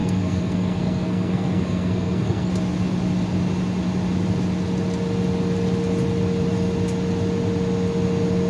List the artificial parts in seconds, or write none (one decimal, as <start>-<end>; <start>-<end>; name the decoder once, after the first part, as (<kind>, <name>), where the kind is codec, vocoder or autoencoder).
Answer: 0.0-2.5 (codec, SNAC)